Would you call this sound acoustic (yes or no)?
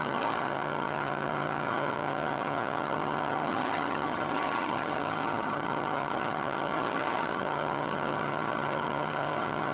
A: no